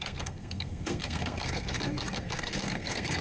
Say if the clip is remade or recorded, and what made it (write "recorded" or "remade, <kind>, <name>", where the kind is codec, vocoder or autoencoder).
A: remade, codec, SNAC